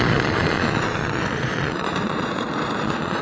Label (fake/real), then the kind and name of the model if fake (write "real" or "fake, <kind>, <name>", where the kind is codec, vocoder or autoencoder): fake, vocoder, Vocos